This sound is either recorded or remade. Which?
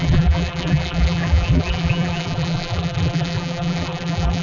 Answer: remade